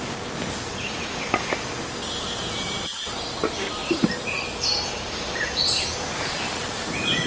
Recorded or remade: remade